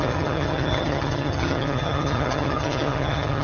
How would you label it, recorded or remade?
remade